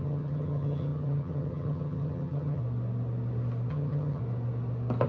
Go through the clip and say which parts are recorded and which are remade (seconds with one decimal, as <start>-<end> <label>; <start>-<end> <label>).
0.0-2.6 remade; 2.6-3.7 recorded; 3.7-4.2 remade; 4.2-5.1 recorded